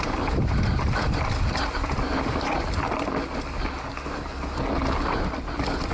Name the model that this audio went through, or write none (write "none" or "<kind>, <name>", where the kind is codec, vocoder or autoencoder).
none